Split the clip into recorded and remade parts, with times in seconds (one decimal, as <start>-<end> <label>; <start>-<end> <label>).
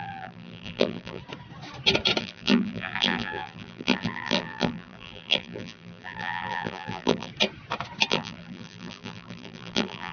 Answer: 0.0-1.2 remade; 1.2-2.2 recorded; 2.2-7.3 remade; 7.3-8.1 recorded; 8.1-10.1 remade